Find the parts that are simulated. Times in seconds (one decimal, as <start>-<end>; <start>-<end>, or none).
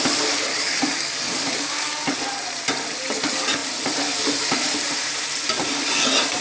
0.5-2.2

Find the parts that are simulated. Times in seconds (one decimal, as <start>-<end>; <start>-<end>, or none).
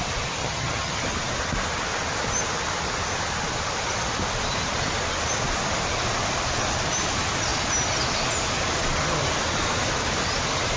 0.4-1.0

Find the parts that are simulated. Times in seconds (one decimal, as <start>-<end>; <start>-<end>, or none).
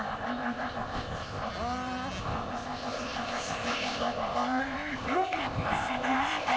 0.0-1.5; 2.2-6.6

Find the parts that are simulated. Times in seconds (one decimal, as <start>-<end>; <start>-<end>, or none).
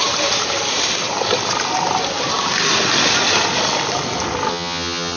4.5-5.2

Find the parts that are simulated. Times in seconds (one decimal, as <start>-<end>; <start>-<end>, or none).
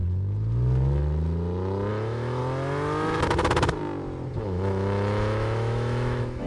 1.9-2.4; 4.4-6.5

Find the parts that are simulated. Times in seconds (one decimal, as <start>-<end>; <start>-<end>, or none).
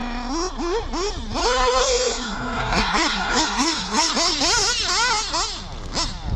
1.4-4.1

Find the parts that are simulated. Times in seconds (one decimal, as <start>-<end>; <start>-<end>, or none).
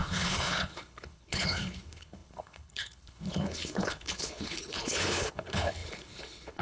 0.0-6.6